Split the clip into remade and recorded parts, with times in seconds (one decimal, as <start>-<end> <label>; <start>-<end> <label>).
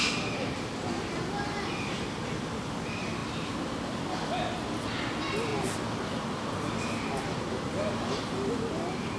0.0-9.2 recorded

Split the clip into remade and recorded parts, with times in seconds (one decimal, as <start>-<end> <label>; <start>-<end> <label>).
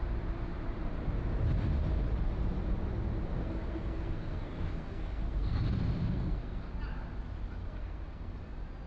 0.0-3.3 recorded; 3.3-5.6 remade; 5.6-6.0 recorded; 6.0-6.7 remade; 6.7-7.6 recorded; 7.6-8.3 remade; 8.3-8.9 recorded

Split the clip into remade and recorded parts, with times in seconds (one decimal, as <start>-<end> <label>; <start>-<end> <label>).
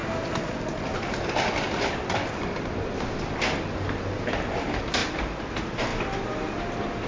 0.0-7.1 recorded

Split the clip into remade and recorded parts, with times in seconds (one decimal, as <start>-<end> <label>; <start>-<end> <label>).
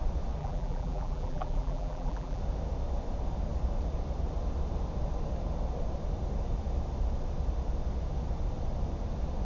0.0-0.4 recorded; 0.4-2.4 remade; 2.4-9.4 recorded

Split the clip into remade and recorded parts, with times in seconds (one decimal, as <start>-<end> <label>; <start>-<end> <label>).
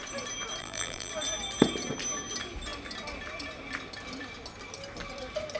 0.0-0.6 recorded; 0.6-1.1 remade; 1.1-5.6 recorded